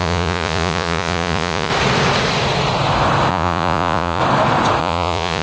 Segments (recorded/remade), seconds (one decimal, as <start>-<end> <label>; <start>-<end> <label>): 0.0-1.7 remade; 1.7-3.3 recorded; 3.3-4.2 remade; 4.2-4.8 recorded; 4.8-5.4 remade